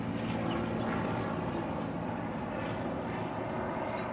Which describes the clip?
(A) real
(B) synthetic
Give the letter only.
A